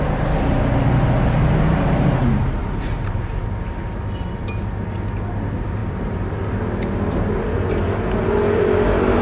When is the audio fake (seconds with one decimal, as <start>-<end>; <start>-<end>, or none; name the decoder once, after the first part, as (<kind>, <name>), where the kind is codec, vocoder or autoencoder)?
2.6-3.3 (vocoder, BigVGAN v2); 5.8-6.3